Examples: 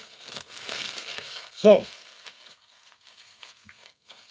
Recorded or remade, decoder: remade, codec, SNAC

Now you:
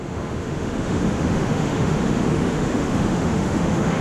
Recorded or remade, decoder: remade, autoencoder, DAC-VAE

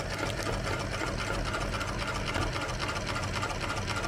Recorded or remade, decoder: recorded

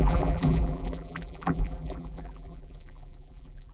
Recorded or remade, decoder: remade, vocoder, BigVGAN v2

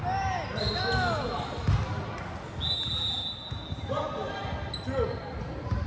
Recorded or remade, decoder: recorded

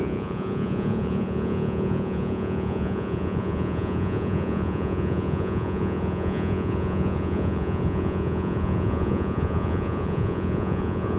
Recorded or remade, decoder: remade, vocoder, Vocos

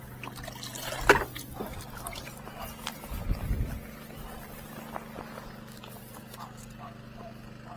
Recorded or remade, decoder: recorded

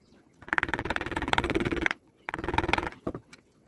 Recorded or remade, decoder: remade, vocoder, WaveNeXt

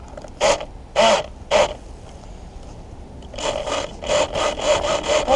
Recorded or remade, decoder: recorded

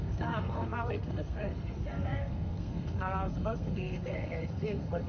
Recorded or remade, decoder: remade, codec, SNAC